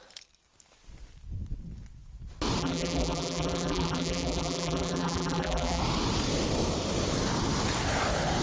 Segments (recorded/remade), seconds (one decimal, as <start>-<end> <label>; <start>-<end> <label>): 0.0-2.6 recorded; 2.6-5.8 remade; 5.8-8.4 recorded